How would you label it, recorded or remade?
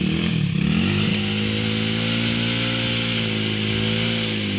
recorded